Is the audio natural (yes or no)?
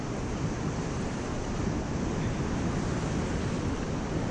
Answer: yes